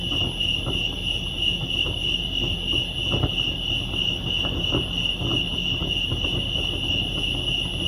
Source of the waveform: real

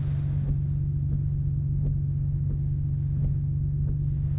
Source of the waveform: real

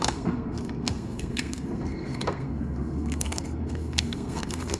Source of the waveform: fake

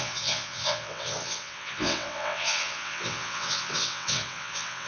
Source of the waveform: fake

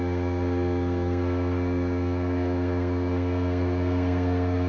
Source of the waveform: fake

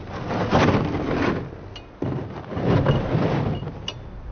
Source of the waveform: real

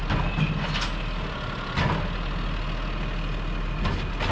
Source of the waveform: real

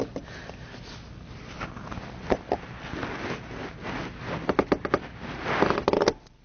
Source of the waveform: real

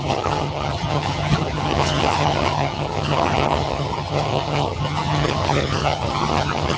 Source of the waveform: fake